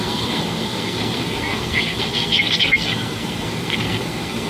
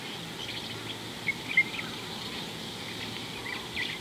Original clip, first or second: second